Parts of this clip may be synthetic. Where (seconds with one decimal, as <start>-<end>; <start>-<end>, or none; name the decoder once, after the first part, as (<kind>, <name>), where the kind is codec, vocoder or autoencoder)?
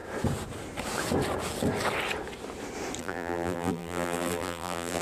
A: 3.0-5.0 (vocoder, BigVGAN v2)